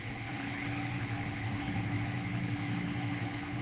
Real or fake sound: fake